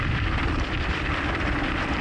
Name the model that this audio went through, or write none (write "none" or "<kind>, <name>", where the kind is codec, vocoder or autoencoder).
vocoder, BigVGAN v2